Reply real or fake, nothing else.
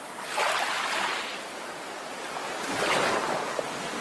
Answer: real